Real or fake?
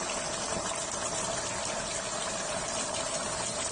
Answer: real